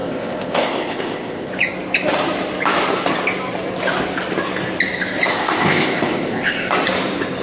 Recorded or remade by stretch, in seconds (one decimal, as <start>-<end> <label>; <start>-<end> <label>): 0.0-1.5 remade; 1.5-5.3 recorded; 5.3-6.7 remade; 6.7-7.4 recorded